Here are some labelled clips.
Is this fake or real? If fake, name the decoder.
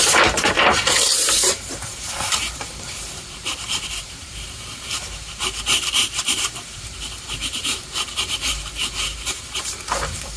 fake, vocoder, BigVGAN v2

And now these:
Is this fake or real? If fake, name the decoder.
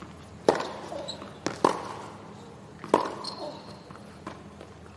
real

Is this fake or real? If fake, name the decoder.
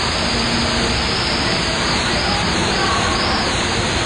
real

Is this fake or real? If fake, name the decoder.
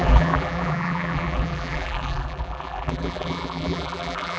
fake, vocoder, BigVGAN v2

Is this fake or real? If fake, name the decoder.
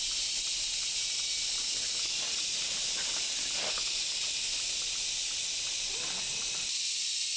real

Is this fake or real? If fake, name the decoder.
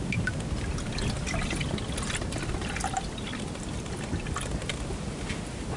real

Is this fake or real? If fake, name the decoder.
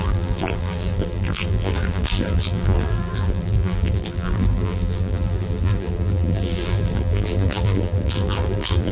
fake, vocoder, BigVGAN v2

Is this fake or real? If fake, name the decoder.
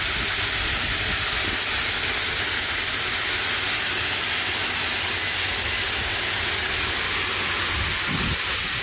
real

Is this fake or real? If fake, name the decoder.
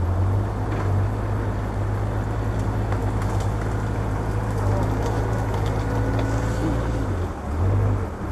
real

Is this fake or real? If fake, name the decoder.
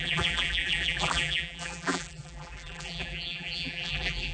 fake, vocoder, BigVGAN v2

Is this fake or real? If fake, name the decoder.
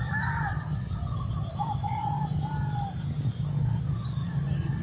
real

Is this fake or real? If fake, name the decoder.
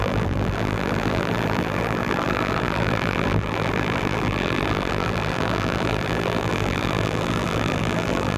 fake, vocoder, BigVGAN v2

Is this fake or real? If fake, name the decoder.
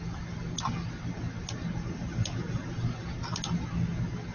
real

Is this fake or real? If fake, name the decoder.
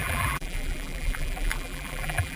fake, vocoder, BigVGAN v2